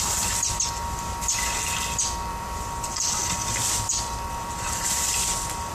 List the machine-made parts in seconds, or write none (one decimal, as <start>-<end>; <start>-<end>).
2.3-5.7